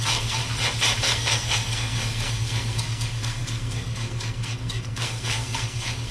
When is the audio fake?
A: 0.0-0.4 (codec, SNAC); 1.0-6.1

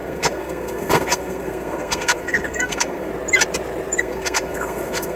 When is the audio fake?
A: 0.0-3.1 (codec, SNAC); 4.0-5.2

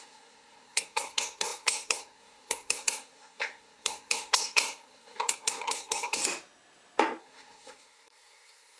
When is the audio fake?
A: 0.0-6.2 (codec, SNAC); 7.2-8.8

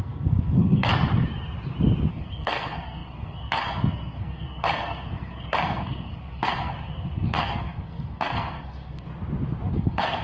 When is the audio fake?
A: 0.0-0.9 (codec, SNAC); 2.1-9.1; 9.7-10.2

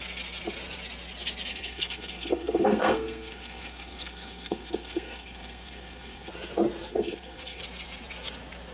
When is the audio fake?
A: 1.5-6.3 (codec, SNAC); 6.9-7.6